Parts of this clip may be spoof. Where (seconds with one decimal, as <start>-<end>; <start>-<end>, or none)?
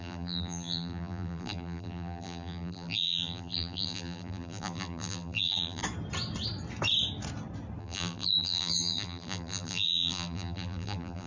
0.0-5.8; 7.8-11.3